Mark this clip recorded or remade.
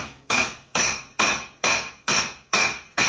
remade